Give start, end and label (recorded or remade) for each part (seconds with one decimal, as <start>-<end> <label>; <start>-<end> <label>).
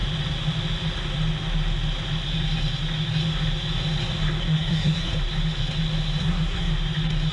0.0-4.4 recorded; 4.4-5.1 remade; 5.1-6.2 recorded; 6.2-6.7 remade; 6.7-7.3 recorded